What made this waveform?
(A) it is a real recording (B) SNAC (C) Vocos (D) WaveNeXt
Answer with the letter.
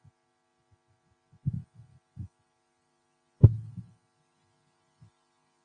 A